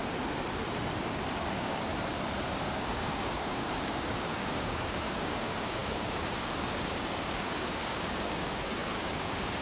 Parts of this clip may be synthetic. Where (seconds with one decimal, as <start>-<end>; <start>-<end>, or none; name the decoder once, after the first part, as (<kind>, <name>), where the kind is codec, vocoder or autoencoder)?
1.5-1.9 (codec, DAC); 2.8-9.6